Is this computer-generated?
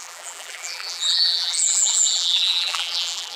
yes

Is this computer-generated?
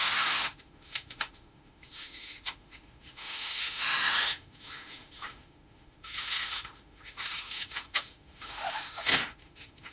yes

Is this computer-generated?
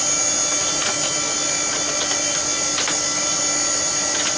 no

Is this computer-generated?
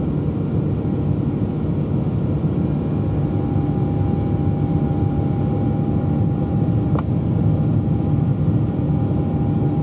no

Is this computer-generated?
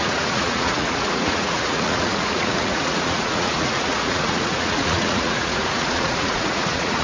yes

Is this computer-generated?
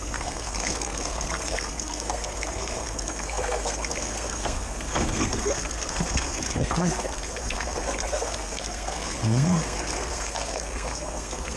yes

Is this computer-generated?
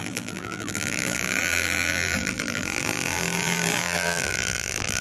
yes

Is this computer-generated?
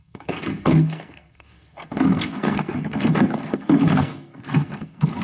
yes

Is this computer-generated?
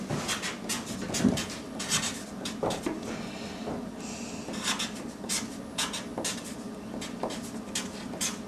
no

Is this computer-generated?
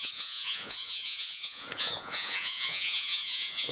yes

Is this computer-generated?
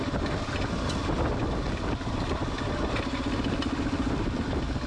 no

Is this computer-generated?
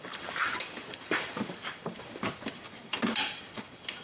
yes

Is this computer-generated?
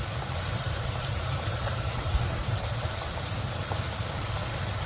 yes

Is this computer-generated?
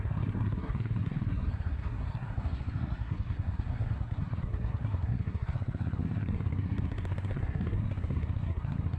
yes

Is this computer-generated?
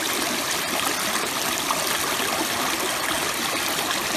no